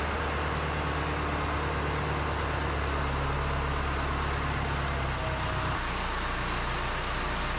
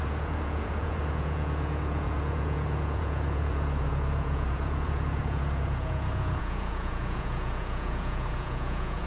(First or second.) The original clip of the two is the first